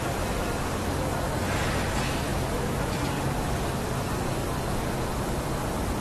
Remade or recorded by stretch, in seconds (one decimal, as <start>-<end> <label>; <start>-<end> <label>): 0.0-2.3 recorded; 2.3-3.0 remade; 3.0-6.0 recorded